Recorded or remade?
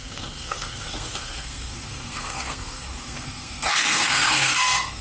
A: remade